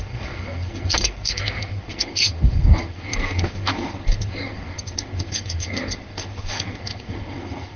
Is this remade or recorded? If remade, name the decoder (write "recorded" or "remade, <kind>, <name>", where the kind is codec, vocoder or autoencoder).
remade, codec, SNAC